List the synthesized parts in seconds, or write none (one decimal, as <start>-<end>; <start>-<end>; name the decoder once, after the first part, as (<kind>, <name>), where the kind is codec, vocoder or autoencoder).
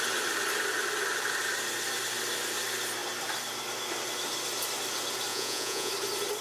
5.3-5.9 (vocoder, Vocos)